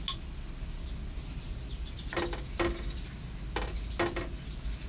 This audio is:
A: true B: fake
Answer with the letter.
A